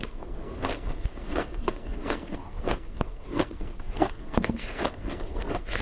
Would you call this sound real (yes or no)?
no